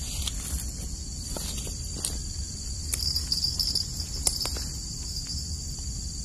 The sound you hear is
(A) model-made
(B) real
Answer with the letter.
B